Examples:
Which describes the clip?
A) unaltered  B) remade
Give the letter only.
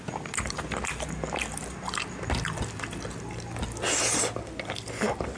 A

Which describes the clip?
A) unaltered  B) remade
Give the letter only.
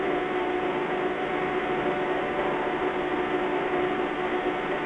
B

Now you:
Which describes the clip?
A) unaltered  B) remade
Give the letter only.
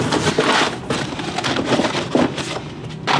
A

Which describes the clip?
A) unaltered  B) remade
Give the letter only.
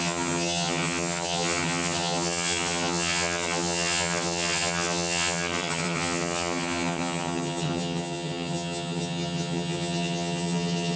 B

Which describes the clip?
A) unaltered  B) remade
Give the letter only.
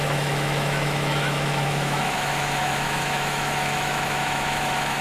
B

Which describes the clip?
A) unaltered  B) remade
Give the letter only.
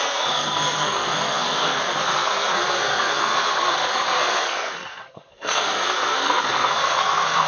B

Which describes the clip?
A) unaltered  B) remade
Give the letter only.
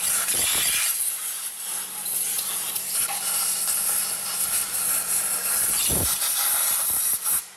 A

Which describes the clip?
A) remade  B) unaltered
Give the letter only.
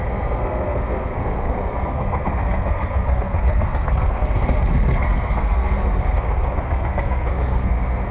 A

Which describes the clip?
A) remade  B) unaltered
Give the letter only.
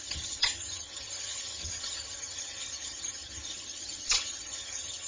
A